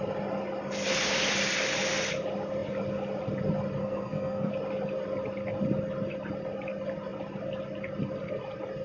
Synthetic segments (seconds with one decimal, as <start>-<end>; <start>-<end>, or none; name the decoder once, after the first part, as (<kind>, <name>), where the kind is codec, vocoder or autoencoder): 3.8-4.5 (codec, SNAC)